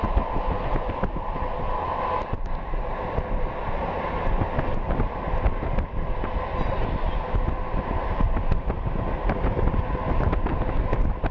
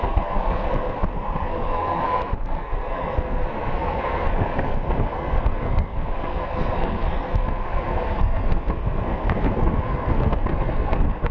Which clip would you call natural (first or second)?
first